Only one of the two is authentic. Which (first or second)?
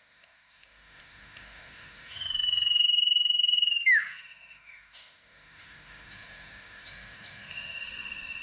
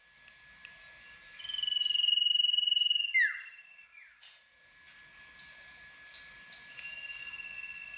second